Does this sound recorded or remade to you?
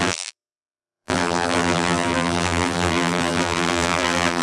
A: remade